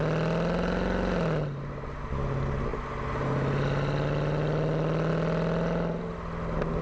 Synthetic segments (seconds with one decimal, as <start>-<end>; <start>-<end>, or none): none